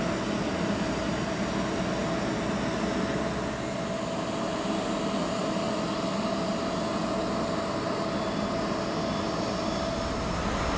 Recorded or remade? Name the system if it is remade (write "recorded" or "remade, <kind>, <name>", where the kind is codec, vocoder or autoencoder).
recorded